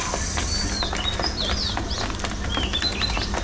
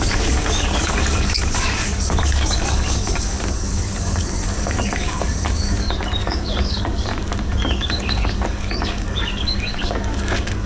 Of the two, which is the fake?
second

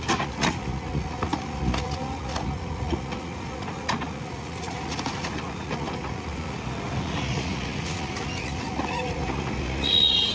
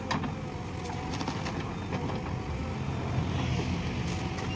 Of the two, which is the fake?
first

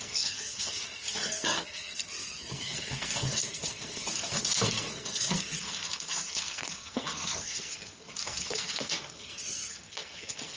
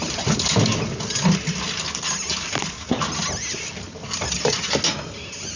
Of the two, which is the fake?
first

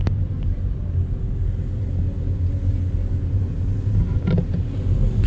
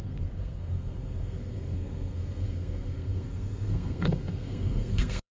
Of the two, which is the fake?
second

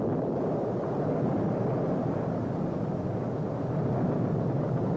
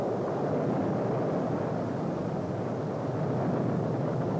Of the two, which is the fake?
first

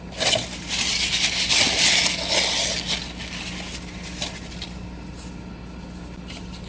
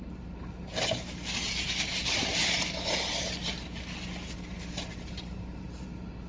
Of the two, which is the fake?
second